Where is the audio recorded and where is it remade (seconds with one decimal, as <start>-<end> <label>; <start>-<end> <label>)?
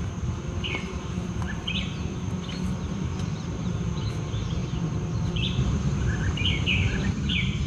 0.0-4.6 remade; 4.6-6.6 recorded; 6.6-7.7 remade